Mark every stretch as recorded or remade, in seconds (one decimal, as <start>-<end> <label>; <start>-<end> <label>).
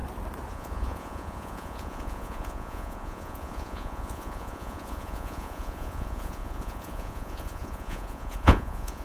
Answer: 0.0-0.5 recorded; 0.5-9.0 remade